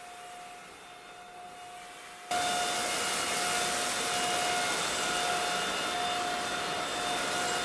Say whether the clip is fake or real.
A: real